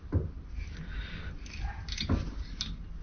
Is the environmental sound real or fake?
real